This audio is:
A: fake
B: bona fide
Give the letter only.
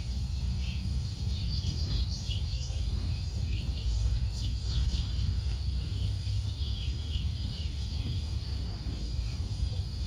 A